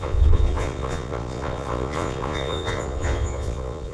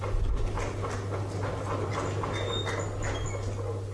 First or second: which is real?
second